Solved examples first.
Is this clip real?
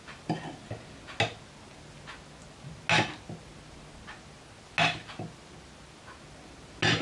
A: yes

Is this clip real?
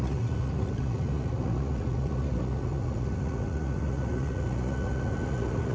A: no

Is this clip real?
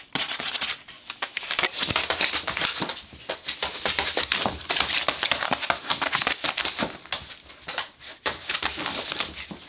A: yes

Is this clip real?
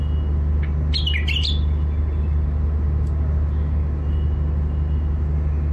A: yes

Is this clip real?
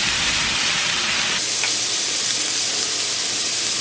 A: yes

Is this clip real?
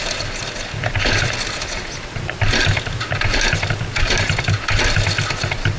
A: yes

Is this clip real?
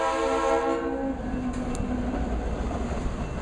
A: yes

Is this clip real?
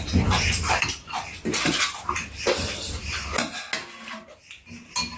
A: yes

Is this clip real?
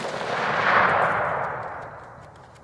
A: yes